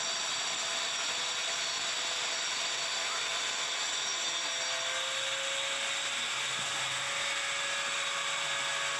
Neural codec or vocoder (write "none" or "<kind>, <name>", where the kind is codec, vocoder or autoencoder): none